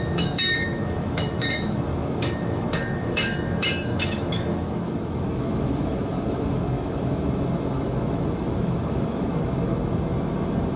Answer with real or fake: fake